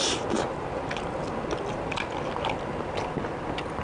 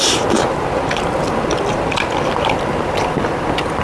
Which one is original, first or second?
first